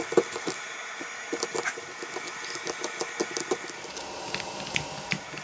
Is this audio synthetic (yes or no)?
no